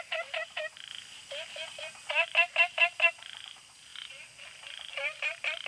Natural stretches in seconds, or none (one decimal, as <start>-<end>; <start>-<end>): 0.9-2.1; 3.9-4.9